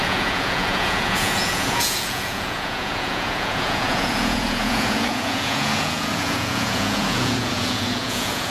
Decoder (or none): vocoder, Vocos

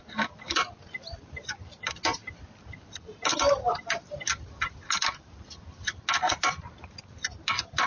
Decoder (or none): none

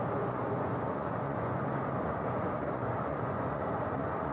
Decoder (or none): vocoder, Vocos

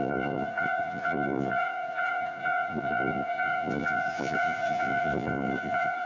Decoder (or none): vocoder, Vocos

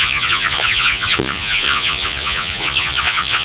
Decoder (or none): vocoder, Vocos